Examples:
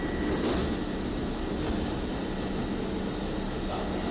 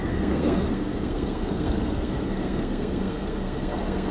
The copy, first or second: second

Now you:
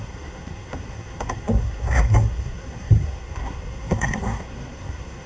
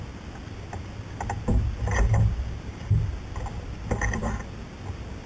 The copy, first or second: first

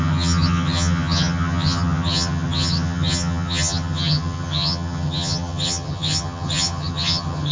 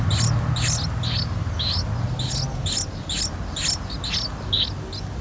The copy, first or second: first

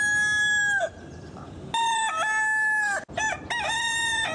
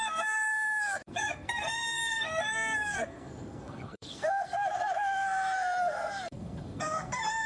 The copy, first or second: second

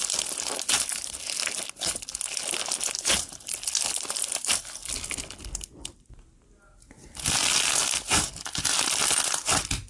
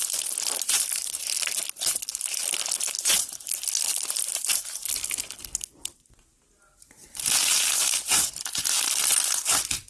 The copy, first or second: second